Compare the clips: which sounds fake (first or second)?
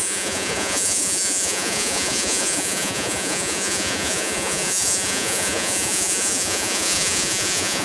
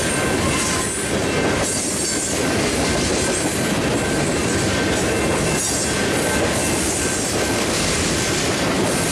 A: first